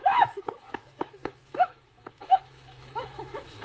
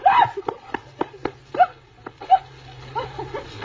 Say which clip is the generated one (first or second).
first